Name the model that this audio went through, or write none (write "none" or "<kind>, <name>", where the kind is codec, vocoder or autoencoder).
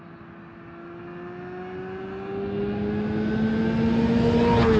none